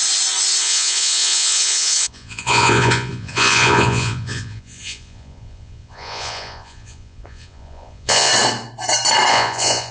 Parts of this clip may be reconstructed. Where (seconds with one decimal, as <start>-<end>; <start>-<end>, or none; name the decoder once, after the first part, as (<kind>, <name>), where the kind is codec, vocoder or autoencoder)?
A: 0.6-8.3 (vocoder, Vocos); 9.3-9.9